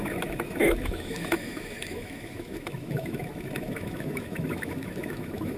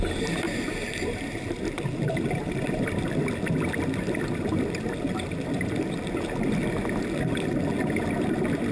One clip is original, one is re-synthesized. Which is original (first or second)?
second